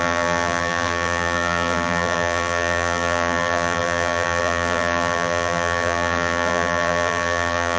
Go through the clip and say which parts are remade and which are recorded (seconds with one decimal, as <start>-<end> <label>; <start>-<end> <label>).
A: 0.0-7.8 remade